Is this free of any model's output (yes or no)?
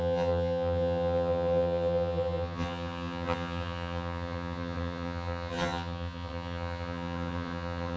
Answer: no